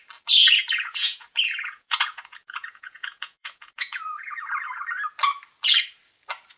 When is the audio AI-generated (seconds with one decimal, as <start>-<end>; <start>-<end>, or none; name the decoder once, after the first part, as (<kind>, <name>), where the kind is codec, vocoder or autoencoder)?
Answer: 0.4-4.4 (vocoder, Vocos)